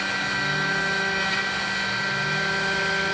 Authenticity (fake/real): real